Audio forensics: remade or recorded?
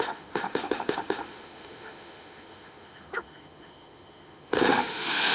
remade